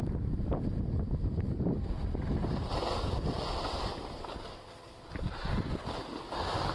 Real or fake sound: real